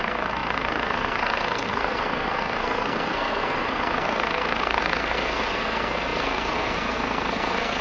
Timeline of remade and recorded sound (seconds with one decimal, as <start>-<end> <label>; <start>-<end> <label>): 0.0-7.8 remade